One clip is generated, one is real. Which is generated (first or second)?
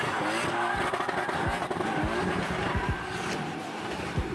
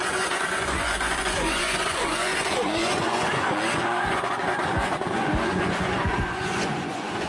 second